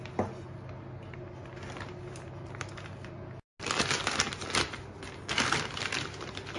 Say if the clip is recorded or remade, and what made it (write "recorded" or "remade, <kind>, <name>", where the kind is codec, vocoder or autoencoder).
recorded